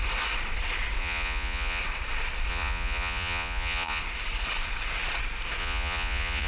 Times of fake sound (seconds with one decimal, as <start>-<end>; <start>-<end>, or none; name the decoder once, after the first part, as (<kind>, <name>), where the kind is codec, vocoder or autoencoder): 1.0-1.8 (vocoder, Vocos); 2.5-4.0; 5.6-6.5